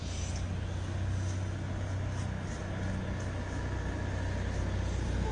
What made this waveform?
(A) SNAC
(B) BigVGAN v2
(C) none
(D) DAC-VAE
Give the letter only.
C